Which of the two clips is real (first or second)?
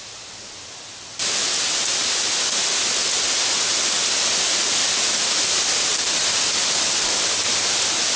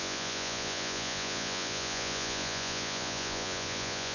first